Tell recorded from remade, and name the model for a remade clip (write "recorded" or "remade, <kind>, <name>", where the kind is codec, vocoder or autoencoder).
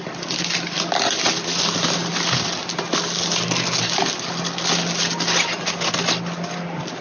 recorded